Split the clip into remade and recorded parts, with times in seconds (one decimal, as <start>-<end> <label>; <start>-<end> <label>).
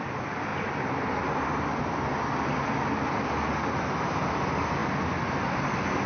0.0-6.1 recorded